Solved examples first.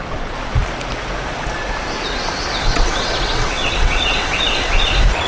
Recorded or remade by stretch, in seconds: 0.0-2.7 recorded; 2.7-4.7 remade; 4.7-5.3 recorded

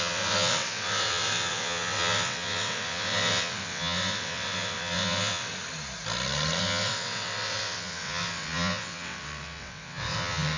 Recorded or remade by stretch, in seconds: 0.0-5.5 remade; 5.5-6.6 recorded; 6.6-10.6 remade

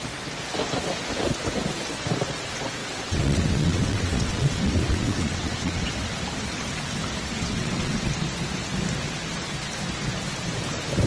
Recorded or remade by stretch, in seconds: 0.0-2.8 recorded; 2.8-5.9 remade; 5.9-7.3 recorded; 7.3-8.1 remade; 8.1-11.1 recorded

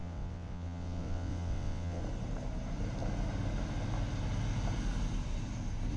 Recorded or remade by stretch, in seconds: 0.0-2.0 remade; 2.0-6.0 recorded

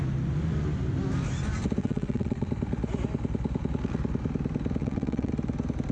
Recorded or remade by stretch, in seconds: 0.0-1.8 recorded; 1.8-2.5 remade; 2.5-4.8 recorded; 4.8-5.3 remade; 5.3-5.9 recorded